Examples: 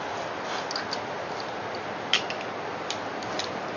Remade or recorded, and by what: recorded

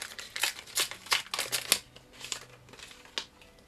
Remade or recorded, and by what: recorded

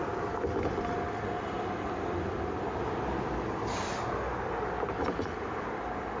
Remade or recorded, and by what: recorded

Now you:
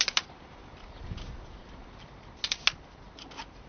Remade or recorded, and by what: recorded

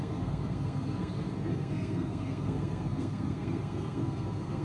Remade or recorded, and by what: remade, codec, SNAC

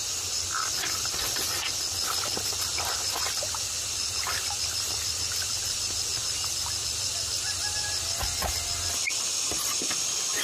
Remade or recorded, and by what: recorded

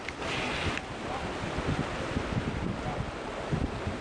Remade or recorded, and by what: recorded